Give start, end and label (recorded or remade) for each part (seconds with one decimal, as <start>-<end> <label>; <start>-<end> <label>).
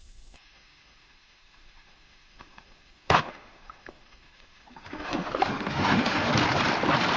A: 0.0-6.3 remade; 6.3-7.2 recorded